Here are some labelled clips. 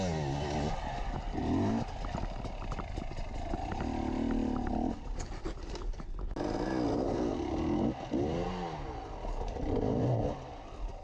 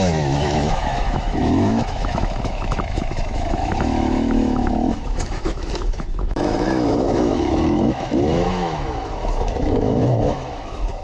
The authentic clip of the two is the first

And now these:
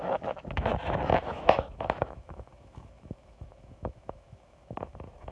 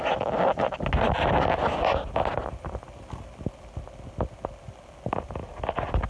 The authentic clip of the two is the second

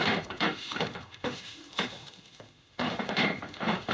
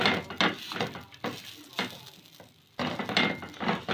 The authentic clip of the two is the second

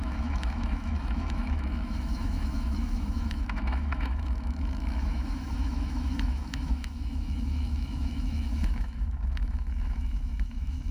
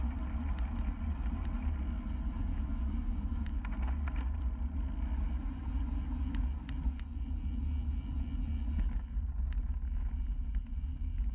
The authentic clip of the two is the second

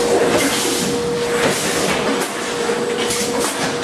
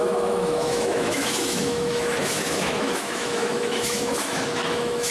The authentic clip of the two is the first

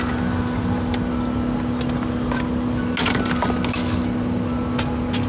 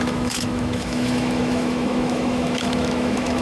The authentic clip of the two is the first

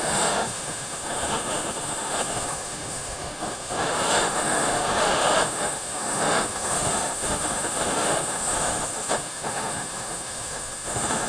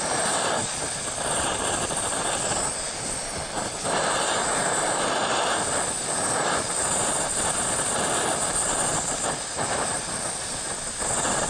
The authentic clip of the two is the second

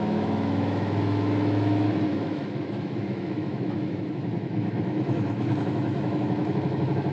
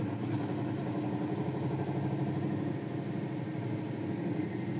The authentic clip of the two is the second